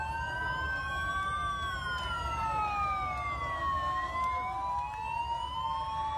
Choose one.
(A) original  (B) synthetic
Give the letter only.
A